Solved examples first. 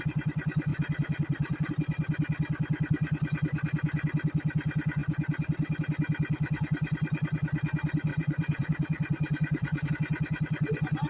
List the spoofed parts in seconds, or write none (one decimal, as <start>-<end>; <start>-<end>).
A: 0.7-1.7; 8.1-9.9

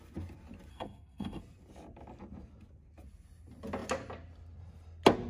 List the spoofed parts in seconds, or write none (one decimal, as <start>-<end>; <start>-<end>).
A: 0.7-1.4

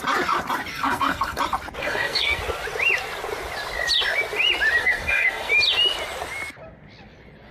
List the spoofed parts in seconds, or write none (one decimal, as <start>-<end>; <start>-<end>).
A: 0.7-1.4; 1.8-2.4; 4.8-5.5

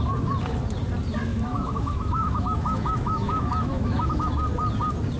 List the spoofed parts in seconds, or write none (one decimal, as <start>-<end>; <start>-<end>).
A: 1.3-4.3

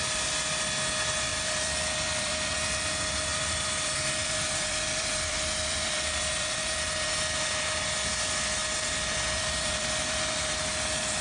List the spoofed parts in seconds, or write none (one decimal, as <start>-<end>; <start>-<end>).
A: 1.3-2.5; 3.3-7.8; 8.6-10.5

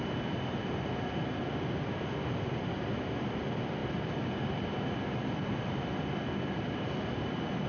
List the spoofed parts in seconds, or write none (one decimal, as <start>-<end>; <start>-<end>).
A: 3.8-7.7

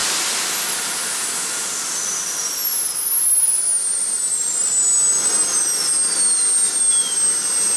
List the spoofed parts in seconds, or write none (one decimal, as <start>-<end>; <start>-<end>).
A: none